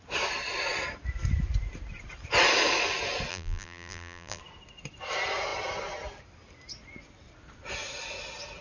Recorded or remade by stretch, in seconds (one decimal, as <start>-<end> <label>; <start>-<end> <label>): 0.0-3.3 recorded; 3.3-4.4 remade; 4.4-8.6 recorded